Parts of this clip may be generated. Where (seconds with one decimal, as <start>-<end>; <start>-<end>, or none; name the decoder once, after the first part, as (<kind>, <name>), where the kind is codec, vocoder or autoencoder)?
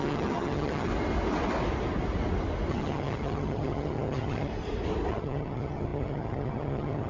0.0-0.9 (vocoder, HiFi-GAN); 2.7-4.5; 5.1-7.1